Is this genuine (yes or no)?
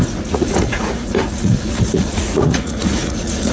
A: no